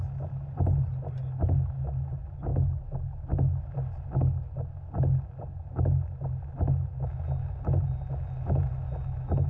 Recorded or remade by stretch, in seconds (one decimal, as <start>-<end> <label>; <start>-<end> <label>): 0.0-9.5 recorded